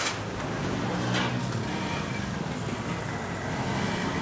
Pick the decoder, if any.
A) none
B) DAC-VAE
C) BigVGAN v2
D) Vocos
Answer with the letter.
A